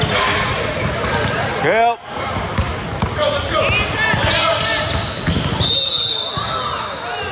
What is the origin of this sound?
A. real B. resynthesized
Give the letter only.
A